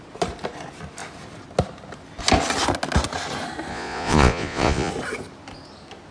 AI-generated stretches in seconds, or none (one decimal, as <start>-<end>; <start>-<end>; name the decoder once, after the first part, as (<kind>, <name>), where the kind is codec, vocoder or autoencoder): 3.7-4.9 (vocoder, Vocos)